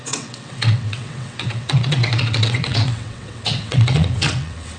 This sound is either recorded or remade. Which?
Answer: remade